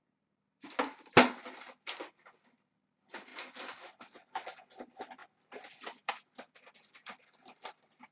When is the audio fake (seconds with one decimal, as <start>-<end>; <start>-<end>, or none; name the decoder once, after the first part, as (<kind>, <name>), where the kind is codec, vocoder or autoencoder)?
none